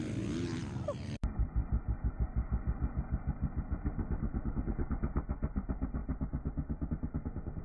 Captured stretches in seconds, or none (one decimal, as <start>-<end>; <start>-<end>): 0.0-3.8; 5.0-6.0; 6.9-7.6